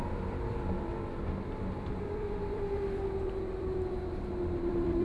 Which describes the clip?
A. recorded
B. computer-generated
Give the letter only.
B